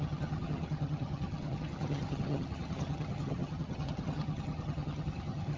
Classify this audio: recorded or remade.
remade